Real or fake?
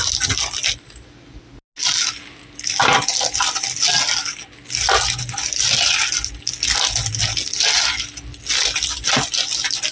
real